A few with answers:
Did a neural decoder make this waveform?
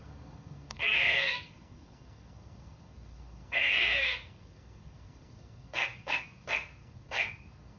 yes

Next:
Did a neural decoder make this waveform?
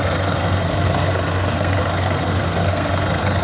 yes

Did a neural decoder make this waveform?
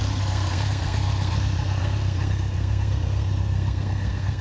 yes